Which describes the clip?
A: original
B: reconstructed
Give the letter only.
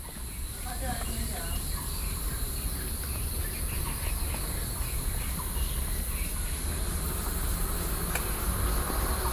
A